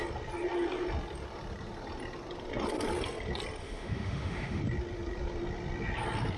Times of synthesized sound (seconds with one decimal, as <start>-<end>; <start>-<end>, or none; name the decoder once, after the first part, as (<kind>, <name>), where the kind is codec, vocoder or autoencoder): 3.6-4.6 (autoencoder, DAC-VAE)